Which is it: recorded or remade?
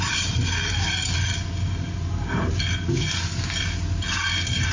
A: recorded